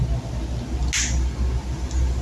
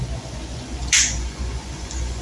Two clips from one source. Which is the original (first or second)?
first